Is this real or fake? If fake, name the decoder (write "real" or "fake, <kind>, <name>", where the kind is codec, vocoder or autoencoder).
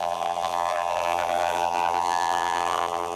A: fake, vocoder, BigVGAN v2